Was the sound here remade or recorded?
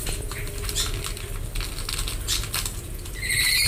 recorded